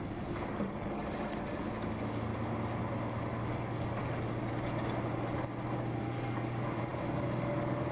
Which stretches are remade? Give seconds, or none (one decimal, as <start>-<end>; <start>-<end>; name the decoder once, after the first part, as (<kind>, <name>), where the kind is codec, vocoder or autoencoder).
0.0-1.0 (codec, DAC); 1.7-2.3; 3.4-4.0; 6.0-7.9